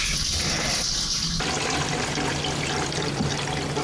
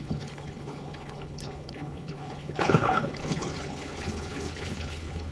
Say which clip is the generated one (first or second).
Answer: second